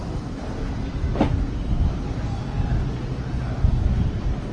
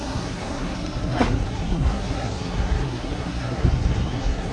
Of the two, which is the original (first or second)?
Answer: first